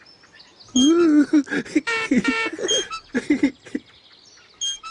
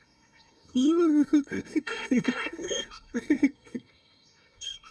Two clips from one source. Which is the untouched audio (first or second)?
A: first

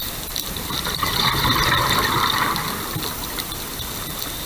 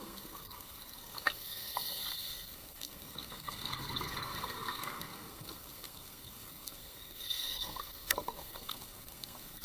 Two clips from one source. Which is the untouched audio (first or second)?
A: first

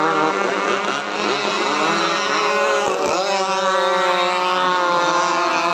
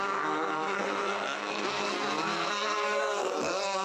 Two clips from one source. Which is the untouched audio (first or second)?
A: first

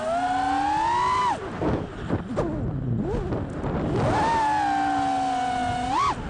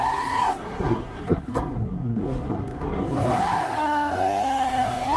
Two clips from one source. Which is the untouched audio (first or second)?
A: first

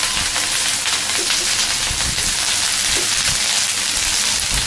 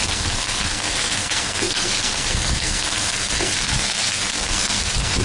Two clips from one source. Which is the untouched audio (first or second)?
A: first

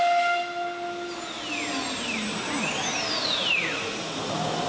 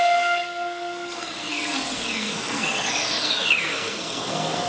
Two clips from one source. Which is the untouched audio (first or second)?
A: first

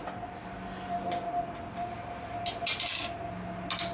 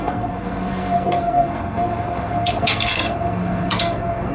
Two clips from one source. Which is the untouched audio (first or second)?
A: first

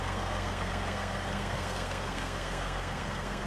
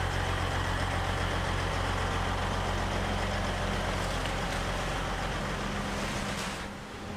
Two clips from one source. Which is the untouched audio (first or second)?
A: second